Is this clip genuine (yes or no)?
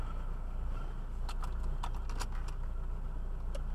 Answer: yes